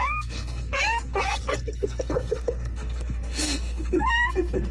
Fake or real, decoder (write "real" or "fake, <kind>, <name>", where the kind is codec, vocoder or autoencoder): fake, codec, SNAC